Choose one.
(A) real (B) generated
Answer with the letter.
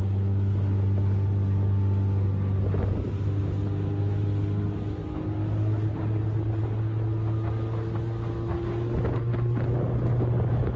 A